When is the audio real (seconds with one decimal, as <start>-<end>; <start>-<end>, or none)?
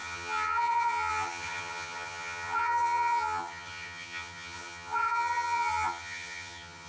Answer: none